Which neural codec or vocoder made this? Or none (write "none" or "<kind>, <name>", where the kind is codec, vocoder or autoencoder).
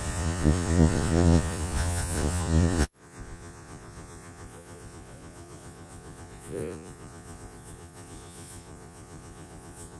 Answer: vocoder, Vocos